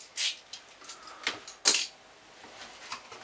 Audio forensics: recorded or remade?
recorded